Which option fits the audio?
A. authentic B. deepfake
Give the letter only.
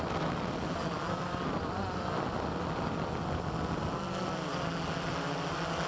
A